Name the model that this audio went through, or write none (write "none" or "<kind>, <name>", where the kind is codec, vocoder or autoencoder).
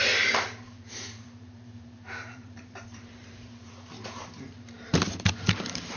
vocoder, BigVGAN v2